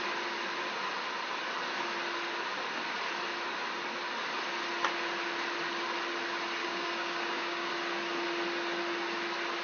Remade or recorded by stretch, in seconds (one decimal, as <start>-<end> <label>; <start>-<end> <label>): 0.0-6.6 recorded; 6.6-7.7 remade; 7.7-9.6 recorded